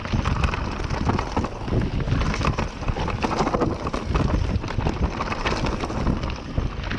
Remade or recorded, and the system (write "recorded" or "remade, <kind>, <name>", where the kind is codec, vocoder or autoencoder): recorded